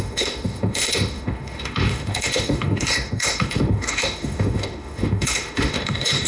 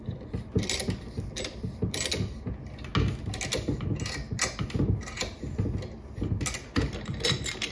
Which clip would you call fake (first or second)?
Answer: first